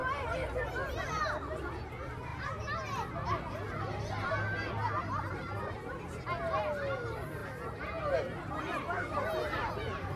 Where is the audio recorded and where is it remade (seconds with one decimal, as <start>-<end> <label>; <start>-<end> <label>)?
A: 0.0-10.2 recorded